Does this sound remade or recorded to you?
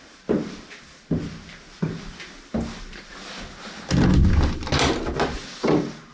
recorded